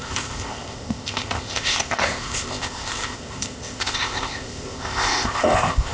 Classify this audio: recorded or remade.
remade